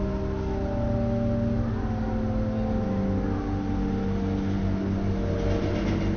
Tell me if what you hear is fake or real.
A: real